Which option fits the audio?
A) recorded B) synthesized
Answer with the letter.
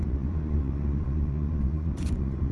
B